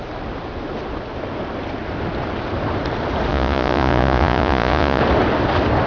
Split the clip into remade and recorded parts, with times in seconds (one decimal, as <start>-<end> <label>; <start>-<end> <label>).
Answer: 0.0-3.3 recorded; 3.3-5.0 remade; 5.0-5.9 recorded

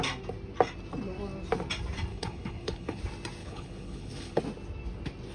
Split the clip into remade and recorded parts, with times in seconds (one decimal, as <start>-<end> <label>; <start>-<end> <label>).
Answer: 0.0-2.1 recorded; 2.1-3.0 remade; 3.0-3.4 recorded; 3.4-4.4 remade; 4.4-5.3 recorded

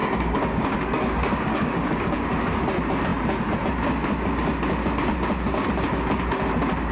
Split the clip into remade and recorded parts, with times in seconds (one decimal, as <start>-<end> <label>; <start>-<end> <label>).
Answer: 0.0-2.2 remade; 2.2-6.9 recorded

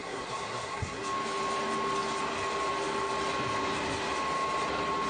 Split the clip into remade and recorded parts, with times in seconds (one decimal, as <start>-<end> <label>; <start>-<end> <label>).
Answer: 0.0-1.0 remade; 1.0-5.1 recorded

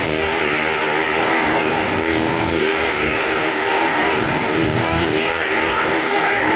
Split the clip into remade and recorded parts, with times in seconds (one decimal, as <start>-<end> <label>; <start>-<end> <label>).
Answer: 0.0-0.4 remade; 0.4-1.2 recorded; 1.2-6.6 remade

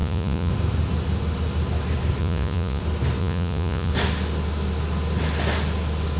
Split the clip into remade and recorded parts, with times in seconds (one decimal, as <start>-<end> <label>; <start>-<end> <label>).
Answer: 0.0-0.5 remade; 0.5-2.2 recorded; 2.2-2.8 remade; 2.8-3.2 recorded; 3.2-3.9 remade; 3.9-6.2 recorded